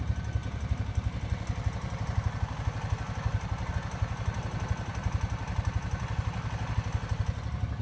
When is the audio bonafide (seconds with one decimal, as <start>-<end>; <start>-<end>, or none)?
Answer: 0.0-7.8